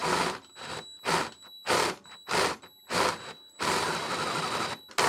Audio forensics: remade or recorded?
recorded